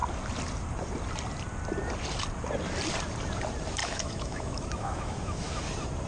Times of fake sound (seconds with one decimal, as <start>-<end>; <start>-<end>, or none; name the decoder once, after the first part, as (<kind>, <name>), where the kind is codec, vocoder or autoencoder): 3.8-5.6 (autoencoder, DAC-VAE)